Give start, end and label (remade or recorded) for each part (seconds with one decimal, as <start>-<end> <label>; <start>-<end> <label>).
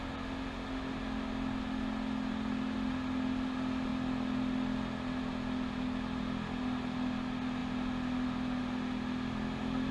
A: 0.0-9.9 recorded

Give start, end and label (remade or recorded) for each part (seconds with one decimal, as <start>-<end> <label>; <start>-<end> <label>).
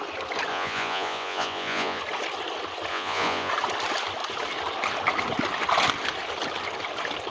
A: 0.0-0.5 recorded; 0.5-2.0 remade; 2.0-2.9 recorded; 2.9-3.5 remade; 3.5-7.3 recorded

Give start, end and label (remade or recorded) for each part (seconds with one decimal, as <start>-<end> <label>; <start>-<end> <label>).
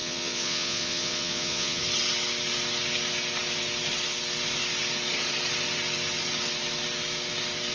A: 0.0-1.8 remade; 1.8-7.7 recorded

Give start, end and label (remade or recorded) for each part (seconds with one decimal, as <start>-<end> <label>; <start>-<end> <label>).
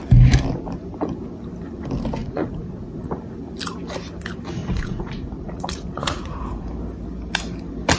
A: 0.0-2.2 recorded; 2.2-3.1 remade; 3.1-4.6 recorded; 4.6-6.7 remade; 6.7-8.0 recorded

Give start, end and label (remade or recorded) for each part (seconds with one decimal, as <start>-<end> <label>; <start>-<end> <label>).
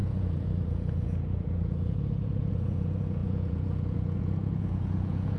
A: 0.0-5.4 remade